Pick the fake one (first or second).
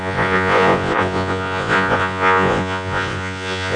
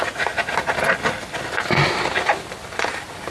first